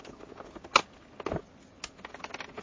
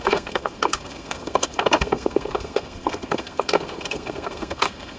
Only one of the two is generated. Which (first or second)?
second